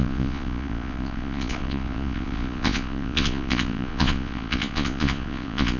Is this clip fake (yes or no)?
yes